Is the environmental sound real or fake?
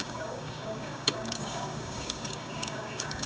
fake